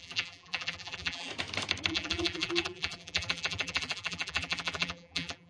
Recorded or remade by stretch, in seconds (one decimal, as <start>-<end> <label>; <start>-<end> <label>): 0.0-1.3 remade; 1.3-1.9 recorded; 1.9-5.5 remade